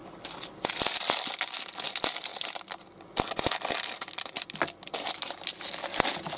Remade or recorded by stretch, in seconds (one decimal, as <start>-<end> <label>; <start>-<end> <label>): 0.0-6.4 recorded